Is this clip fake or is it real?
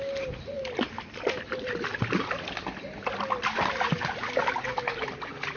real